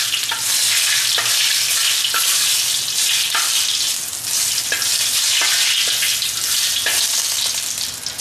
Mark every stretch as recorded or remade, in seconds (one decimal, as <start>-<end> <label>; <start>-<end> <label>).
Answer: 0.0-8.2 recorded